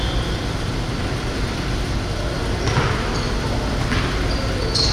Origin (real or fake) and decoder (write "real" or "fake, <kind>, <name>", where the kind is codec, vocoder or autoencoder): real